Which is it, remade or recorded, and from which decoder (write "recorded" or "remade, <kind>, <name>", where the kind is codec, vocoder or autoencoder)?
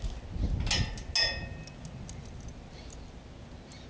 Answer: recorded